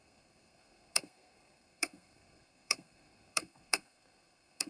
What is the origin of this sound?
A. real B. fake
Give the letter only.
B